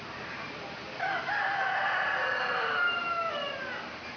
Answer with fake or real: real